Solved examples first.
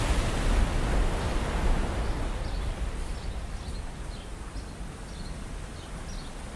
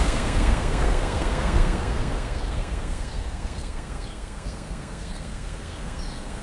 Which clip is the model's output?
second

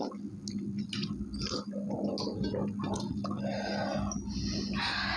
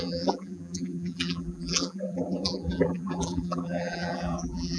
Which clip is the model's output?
second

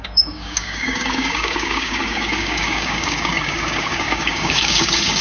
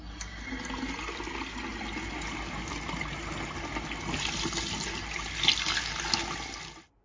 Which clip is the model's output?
first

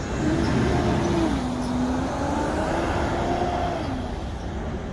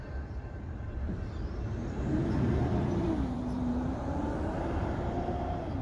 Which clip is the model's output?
second